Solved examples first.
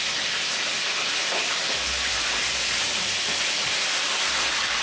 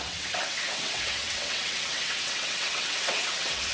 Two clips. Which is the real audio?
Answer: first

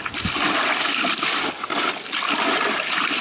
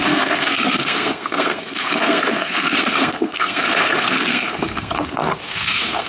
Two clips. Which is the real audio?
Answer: first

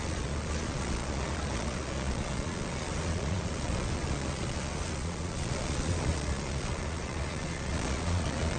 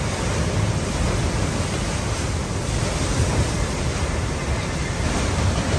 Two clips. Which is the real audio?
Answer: second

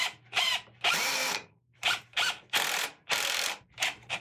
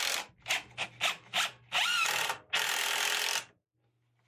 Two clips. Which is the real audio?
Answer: second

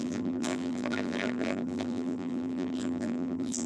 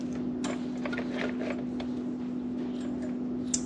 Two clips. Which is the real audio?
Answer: second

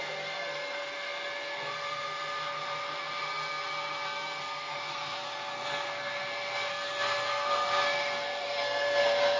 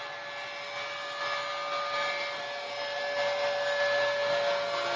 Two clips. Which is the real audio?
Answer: second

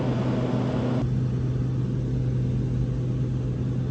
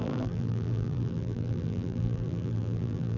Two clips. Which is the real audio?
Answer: first